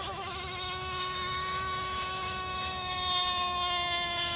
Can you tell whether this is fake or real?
fake